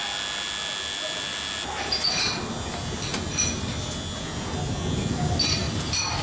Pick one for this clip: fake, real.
real